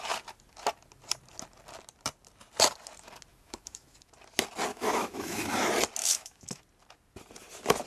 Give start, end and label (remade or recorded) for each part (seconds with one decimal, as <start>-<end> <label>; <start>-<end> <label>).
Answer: 0.0-3.3 recorded; 3.3-4.1 remade; 4.1-4.7 recorded; 4.7-5.4 remade; 5.4-6.0 recorded; 6.0-6.6 remade; 6.6-7.9 recorded